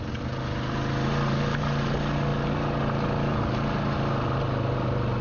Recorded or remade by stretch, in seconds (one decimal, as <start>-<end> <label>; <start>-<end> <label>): 0.0-5.2 recorded